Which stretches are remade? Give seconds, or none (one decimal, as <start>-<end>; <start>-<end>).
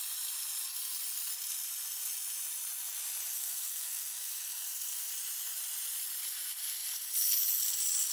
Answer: 3.3-5.1